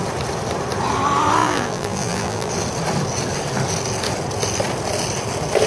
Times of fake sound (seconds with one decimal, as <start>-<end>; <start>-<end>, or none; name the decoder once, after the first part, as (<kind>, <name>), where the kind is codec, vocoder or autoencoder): 1.4-2.5 (vocoder, BigVGAN v2)